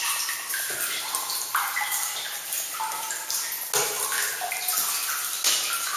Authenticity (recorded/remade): recorded